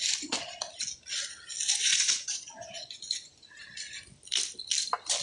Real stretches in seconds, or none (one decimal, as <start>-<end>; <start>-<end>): 0.0-1.7; 3.4-5.2

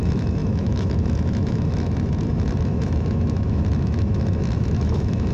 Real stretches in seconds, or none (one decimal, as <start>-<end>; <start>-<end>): none

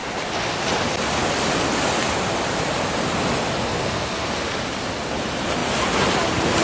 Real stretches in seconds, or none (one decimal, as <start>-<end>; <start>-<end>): 0.0-3.7; 4.3-6.6